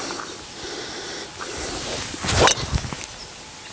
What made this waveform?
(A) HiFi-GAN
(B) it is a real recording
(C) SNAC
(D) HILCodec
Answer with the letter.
B